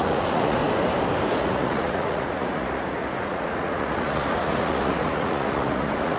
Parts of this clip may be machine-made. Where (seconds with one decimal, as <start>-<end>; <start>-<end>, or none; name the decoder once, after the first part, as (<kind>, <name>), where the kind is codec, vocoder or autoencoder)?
0.0-0.6 (vocoder, Vocos); 1.4-6.2